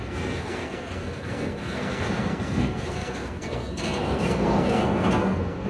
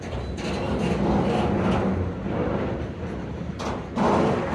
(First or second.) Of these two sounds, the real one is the second